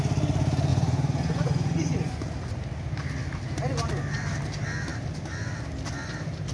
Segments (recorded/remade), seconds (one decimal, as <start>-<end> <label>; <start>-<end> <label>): 0.0-0.7 recorded; 0.7-2.1 remade; 2.1-6.5 recorded